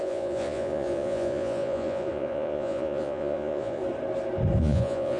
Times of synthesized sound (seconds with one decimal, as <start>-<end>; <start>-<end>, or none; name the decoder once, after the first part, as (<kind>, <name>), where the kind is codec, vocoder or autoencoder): 0.0-3.8 (vocoder, Vocos); 4.6-5.2